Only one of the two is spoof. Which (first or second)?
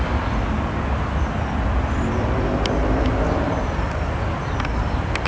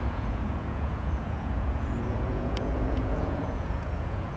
second